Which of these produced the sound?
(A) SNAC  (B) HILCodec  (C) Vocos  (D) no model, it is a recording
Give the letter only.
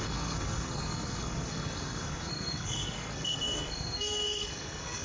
A